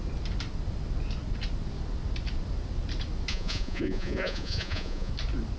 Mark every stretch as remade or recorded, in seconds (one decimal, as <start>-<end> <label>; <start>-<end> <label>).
0.0-3.3 recorded; 3.3-5.1 remade; 5.1-5.6 recorded